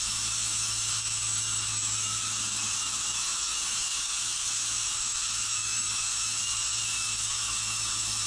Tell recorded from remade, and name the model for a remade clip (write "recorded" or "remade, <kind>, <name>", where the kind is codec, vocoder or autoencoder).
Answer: remade, autoencoder, DAC-VAE